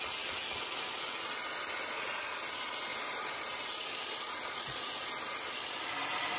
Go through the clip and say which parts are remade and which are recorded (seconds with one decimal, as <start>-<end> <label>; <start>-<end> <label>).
0.0-2.9 recorded; 2.9-3.6 remade; 3.6-6.4 recorded